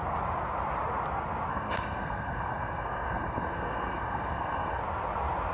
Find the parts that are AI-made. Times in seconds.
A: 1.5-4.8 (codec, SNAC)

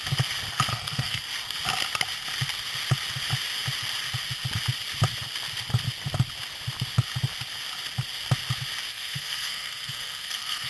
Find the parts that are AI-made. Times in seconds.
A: 0.7-1.2 (codec, SNAC); 8.9-10.7